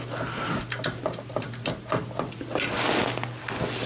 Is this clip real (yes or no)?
yes